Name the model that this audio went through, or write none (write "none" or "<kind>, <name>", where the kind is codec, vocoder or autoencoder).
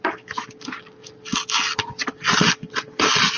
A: none